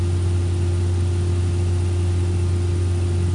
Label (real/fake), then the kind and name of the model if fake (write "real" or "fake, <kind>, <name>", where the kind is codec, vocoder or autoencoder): real